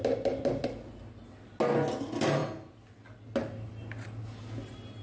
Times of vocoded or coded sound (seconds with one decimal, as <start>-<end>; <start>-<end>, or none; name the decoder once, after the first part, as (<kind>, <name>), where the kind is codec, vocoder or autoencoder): none